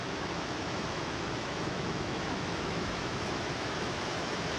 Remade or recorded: remade